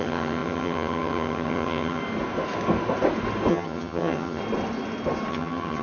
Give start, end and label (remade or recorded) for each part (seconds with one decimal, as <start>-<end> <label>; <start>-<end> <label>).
0.0-2.0 remade; 2.0-3.5 recorded; 3.5-4.4 remade; 4.4-5.3 recorded; 5.3-5.8 remade